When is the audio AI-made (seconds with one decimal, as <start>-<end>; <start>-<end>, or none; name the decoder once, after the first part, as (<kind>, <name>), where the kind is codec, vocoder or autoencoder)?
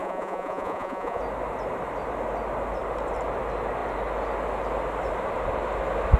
0.0-1.2 (vocoder, Vocos)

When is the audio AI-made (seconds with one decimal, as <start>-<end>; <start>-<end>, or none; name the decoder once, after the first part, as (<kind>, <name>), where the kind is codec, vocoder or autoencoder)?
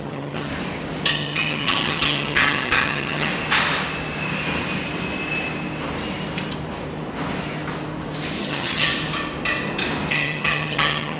0.0-0.5 (vocoder, HiFi-GAN); 1.1-3.3; 8.4-8.9; 10.1-11.2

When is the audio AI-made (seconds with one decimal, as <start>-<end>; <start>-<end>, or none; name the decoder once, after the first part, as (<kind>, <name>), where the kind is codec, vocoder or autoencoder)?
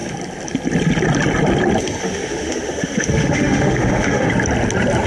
2.0-4.3 (autoencoder, DAC-VAE)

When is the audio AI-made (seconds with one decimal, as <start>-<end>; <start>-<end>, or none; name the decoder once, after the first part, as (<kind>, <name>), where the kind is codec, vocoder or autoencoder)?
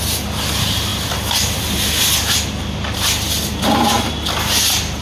none